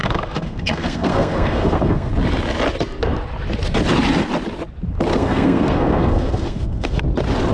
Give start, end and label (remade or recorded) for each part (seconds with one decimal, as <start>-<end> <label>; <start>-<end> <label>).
0.0-2.1 remade; 2.1-5.1 recorded; 5.1-7.0 remade; 7.0-7.5 recorded